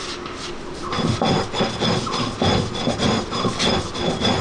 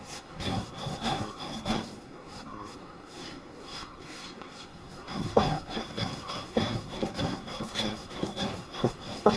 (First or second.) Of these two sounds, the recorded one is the first